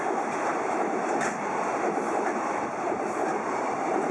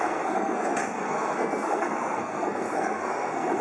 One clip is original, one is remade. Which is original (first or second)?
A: first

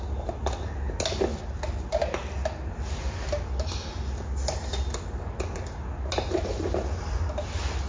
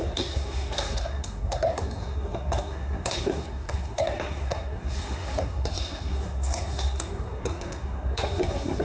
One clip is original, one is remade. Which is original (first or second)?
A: first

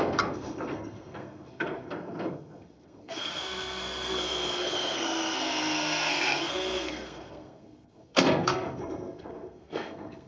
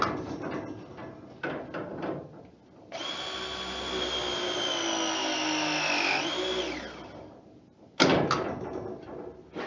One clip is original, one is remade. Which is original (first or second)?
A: second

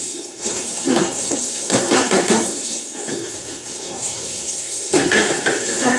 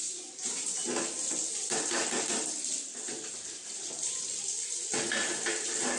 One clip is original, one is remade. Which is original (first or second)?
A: second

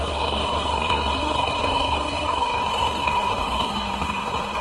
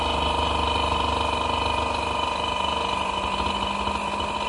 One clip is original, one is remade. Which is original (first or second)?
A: second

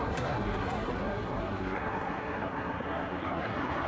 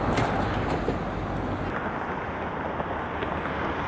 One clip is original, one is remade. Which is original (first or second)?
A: second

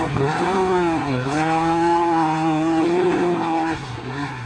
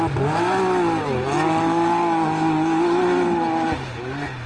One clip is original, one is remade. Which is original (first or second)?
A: second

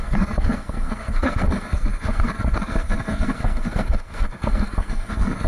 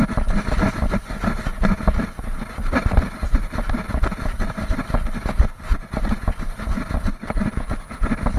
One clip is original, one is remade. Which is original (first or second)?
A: second